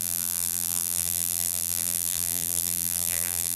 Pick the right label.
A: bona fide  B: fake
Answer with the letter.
B